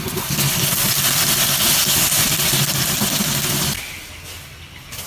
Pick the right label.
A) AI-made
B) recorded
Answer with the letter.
B